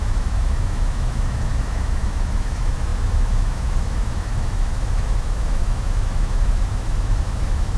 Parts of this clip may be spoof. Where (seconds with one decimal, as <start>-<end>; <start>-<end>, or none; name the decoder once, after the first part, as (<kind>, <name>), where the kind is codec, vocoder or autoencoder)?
0.0-7.8 (autoencoder, DAC-VAE)